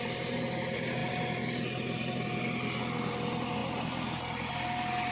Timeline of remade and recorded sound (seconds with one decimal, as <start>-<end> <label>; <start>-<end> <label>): 0.0-5.1 recorded